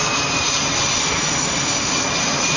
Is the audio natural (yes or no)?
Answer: yes